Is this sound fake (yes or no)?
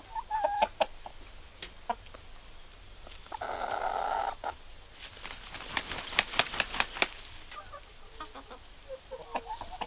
no